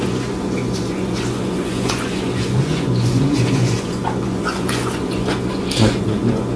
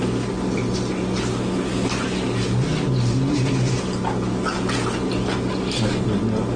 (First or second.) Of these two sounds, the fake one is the first